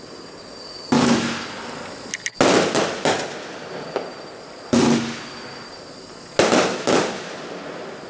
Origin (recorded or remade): recorded